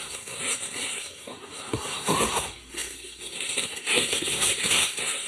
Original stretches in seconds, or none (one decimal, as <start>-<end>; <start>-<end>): none